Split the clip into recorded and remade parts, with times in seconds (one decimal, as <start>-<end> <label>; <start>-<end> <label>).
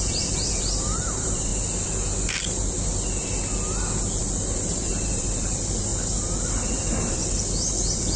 0.0-1.5 remade; 1.5-4.2 recorded; 4.2-5.9 remade; 5.9-6.7 recorded; 6.7-7.2 remade; 7.2-8.2 recorded